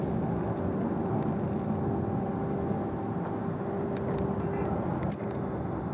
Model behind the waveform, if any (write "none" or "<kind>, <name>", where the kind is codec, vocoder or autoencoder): none